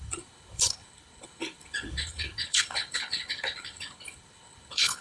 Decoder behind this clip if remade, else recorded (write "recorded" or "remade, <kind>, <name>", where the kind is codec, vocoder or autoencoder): remade, codec, HILCodec